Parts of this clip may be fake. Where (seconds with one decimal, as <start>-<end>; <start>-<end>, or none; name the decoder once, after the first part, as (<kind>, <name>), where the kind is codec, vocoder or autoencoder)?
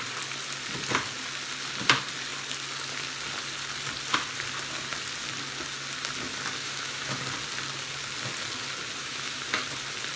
6.6-7.2 (autoencoder, DAC-VAE); 9.0-9.5